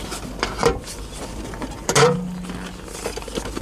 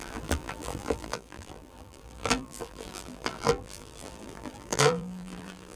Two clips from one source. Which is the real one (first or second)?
first